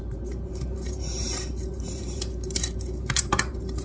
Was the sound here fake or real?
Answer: fake